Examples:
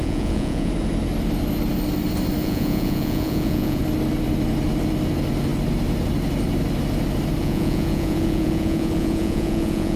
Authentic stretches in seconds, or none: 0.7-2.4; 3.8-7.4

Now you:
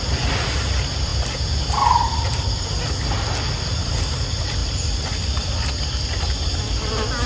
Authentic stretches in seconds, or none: 0.0-7.3

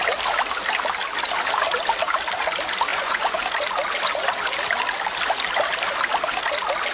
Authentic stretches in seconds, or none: 0.0-2.9; 3.4-6.9